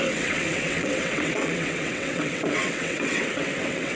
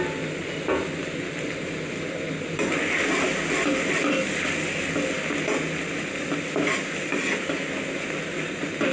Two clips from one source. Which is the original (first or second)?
second